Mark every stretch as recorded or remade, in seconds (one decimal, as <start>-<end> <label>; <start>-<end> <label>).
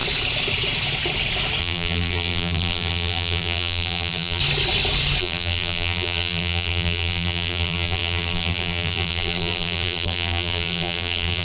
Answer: 0.0-1.6 recorded; 1.6-4.4 remade; 4.4-5.2 recorded; 5.2-11.4 remade